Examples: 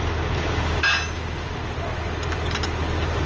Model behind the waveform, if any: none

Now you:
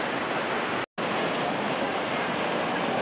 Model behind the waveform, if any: none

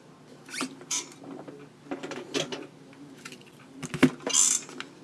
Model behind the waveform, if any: none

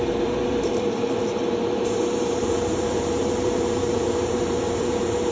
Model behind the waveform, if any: vocoder, BigVGAN v2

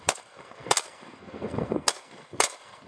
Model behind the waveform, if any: codec, SNAC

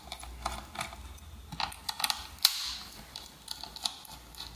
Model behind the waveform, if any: none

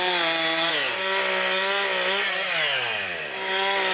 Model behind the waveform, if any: none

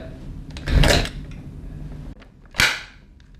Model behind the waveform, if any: none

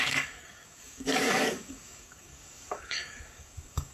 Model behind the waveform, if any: codec, DAC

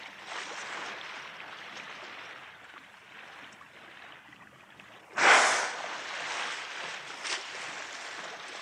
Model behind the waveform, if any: none